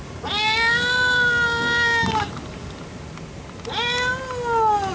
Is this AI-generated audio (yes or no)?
no